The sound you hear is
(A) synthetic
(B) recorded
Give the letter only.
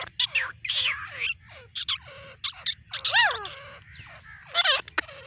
B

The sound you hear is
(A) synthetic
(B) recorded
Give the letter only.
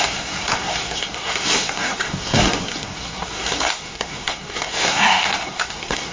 A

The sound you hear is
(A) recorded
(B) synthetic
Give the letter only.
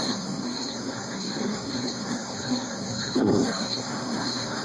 B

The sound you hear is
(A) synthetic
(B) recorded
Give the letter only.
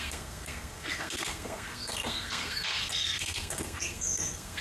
A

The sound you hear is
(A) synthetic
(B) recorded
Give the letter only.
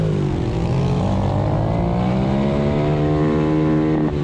B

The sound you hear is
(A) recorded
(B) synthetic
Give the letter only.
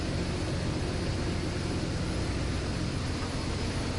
A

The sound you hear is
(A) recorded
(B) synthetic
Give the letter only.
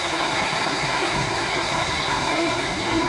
B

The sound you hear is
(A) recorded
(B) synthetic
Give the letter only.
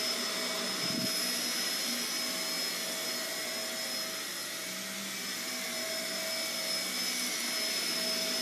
A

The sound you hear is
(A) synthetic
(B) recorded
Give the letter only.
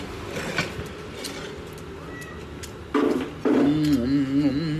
B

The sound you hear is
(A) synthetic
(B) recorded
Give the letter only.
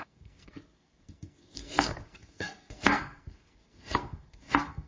A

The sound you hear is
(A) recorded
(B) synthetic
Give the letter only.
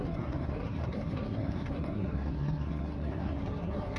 B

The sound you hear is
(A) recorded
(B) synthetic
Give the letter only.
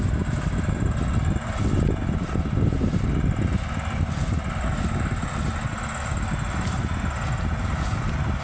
A